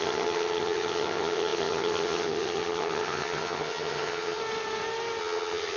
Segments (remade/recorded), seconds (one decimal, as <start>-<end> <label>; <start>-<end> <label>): 0.0-4.4 remade; 4.4-5.2 recorded; 5.2-5.8 remade